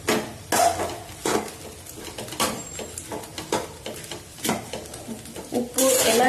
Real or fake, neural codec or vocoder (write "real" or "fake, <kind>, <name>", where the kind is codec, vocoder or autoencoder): real